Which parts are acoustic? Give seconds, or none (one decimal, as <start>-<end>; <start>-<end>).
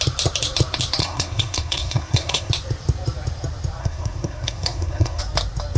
0.0-1.0; 2.5-3.8; 5.2-5.8